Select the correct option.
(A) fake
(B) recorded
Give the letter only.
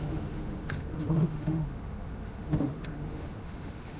A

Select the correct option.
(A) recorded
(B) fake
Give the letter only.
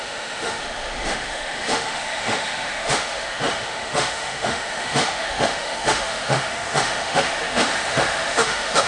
B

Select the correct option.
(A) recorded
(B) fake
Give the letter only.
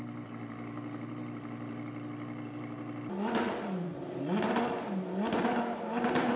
A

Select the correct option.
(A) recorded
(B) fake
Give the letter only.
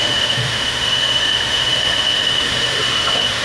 B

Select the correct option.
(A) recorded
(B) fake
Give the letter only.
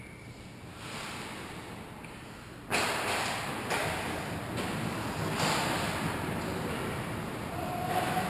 A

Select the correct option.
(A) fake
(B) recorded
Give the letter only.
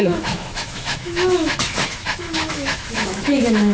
A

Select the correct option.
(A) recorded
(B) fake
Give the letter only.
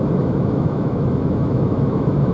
B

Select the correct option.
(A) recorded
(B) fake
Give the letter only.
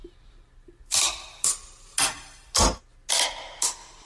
A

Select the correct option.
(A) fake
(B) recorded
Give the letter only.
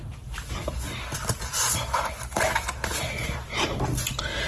B